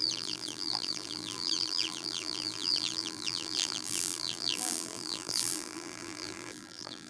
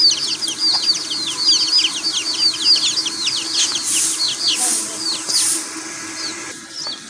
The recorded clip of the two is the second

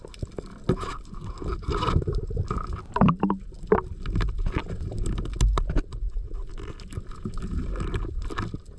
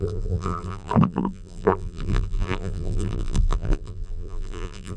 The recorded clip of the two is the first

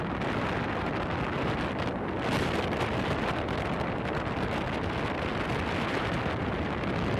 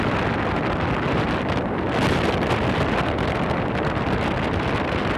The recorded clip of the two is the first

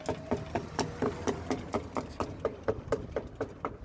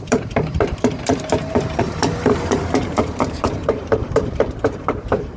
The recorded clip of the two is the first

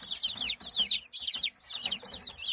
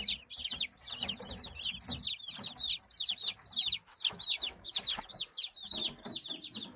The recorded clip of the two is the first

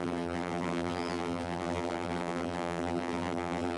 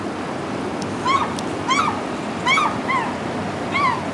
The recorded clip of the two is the second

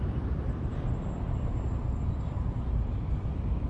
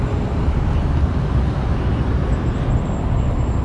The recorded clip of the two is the second